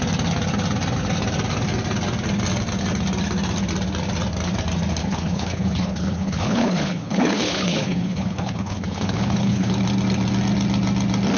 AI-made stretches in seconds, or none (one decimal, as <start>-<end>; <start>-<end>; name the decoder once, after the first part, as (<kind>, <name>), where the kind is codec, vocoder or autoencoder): 5.0-9.7 (codec, HILCodec)